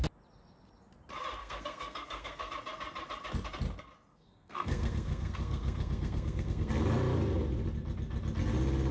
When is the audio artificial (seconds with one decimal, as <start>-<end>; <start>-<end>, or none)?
1.4-2.5; 4.1-6.7